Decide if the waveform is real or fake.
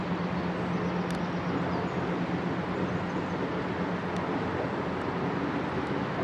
real